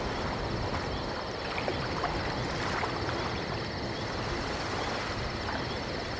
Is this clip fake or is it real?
real